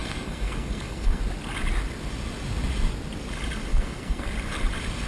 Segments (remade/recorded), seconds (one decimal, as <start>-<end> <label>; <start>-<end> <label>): 0.0-1.2 remade; 1.2-3.7 recorded; 3.7-4.3 remade; 4.3-5.1 recorded